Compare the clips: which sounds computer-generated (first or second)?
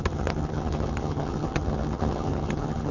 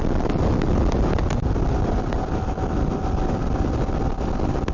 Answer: first